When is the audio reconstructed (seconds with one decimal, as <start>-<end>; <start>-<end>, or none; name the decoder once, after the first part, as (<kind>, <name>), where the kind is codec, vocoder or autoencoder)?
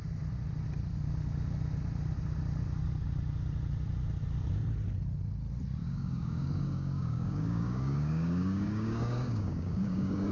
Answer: 5.8-10.3 (codec, DAC)